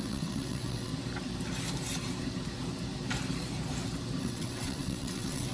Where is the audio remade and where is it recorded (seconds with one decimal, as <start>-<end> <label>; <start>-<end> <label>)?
0.0-0.9 remade; 0.9-4.2 recorded; 4.2-5.5 remade